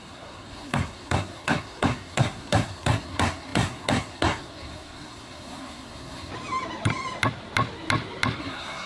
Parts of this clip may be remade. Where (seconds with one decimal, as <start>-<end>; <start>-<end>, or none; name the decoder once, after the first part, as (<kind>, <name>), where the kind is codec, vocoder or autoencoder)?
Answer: 0.0-6.3 (codec, SNAC); 8.4-8.9